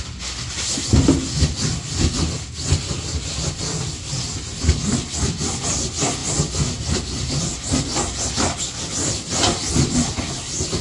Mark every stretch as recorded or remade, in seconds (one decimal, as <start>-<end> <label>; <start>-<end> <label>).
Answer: 0.0-10.8 recorded